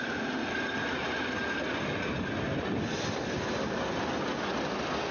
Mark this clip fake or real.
real